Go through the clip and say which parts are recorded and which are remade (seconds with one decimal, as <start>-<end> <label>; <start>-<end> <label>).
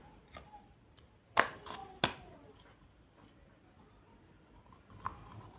0.0-5.6 recorded